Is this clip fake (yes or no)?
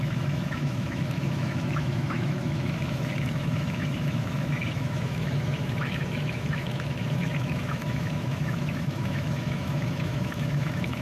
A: yes